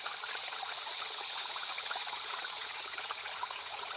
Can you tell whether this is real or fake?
fake